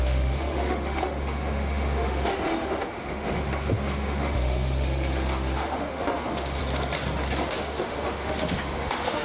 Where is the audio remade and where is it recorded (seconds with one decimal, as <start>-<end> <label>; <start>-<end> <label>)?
0.0-6.6 remade; 6.6-7.5 recorded; 7.5-9.2 remade